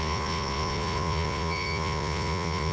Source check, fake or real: fake